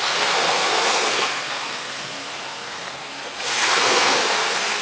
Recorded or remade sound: remade